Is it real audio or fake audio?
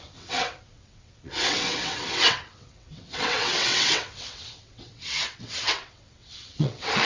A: fake